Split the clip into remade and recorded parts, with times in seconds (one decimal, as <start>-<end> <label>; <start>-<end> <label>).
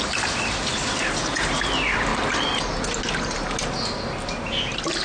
0.0-5.0 recorded